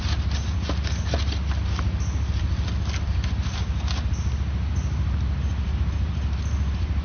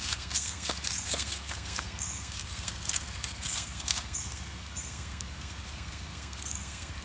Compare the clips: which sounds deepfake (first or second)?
second